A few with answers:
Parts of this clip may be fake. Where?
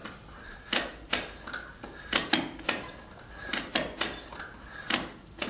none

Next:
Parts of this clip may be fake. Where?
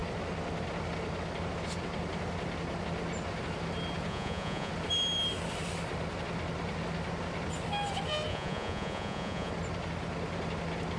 4.1-4.7; 8.3-9.5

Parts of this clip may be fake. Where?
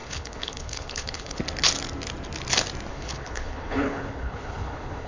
0.0-1.4; 2.9-5.1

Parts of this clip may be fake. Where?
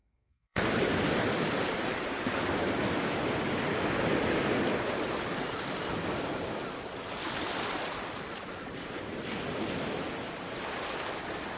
0.0-0.6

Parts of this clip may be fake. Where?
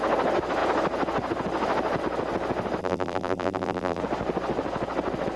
2.8-4.0